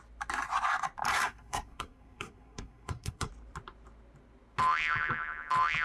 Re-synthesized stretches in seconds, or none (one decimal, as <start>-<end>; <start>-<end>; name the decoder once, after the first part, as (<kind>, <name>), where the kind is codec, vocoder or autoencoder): 1.1-3.3 (codec, SNAC)